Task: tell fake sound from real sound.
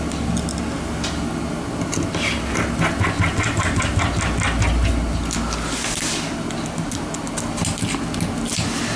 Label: real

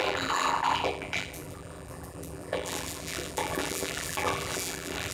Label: fake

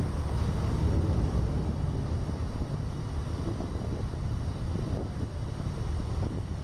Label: real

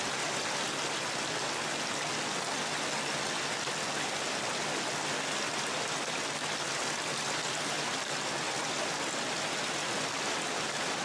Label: real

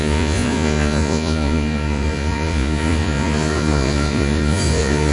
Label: fake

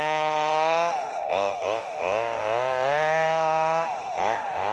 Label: fake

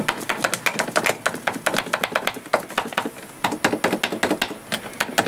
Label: real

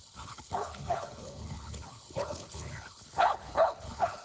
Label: fake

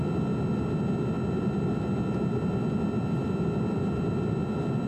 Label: real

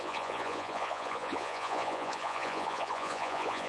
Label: fake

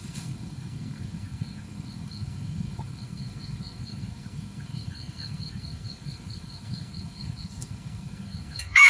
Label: fake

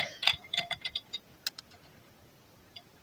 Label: fake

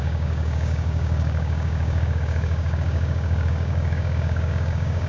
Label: fake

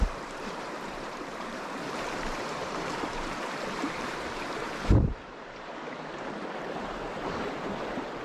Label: fake